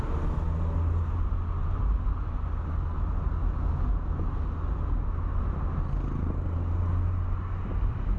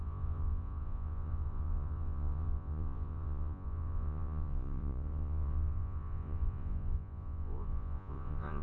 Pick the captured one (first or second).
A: first